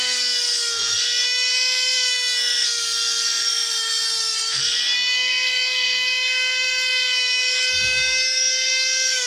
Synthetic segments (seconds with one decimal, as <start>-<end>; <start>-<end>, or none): 0.0-9.3